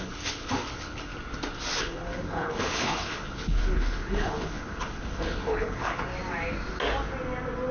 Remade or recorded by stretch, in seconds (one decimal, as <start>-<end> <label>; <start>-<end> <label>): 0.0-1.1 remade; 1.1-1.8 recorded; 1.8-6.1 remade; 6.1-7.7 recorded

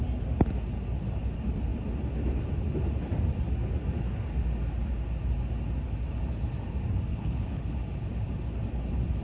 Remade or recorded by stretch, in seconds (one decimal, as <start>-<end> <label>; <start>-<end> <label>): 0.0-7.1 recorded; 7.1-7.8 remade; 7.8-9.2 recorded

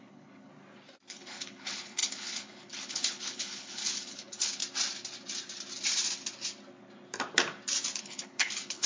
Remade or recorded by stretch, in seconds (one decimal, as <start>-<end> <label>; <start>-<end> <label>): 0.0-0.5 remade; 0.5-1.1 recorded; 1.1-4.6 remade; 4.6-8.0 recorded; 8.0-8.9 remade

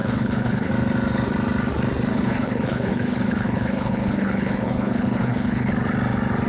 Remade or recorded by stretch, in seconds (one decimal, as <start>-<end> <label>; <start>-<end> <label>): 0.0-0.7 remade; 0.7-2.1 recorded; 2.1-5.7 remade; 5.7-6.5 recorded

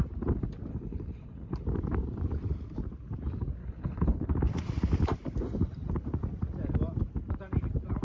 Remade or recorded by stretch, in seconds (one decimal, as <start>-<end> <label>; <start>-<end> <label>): 0.0-0.7 recorded; 0.7-1.6 remade; 1.6-3.6 recorded; 3.6-4.3 remade; 4.3-8.0 recorded

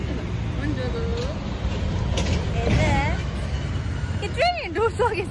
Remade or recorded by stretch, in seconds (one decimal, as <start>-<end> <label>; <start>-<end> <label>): 0.0-5.3 recorded

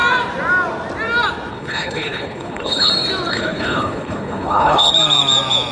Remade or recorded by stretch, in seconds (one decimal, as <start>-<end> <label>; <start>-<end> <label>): 0.0-1.5 recorded; 1.5-2.9 remade; 2.9-3.3 recorded; 3.3-4.9 remade; 4.9-5.7 recorded